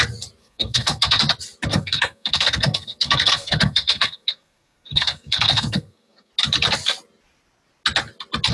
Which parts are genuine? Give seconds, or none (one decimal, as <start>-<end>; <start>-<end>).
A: 0.0-0.4; 1.2-1.7; 6.3-8.5